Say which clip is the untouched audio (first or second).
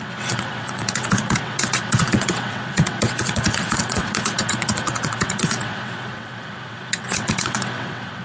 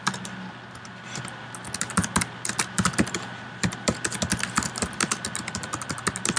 second